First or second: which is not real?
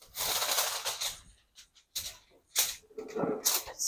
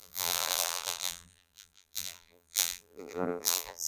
second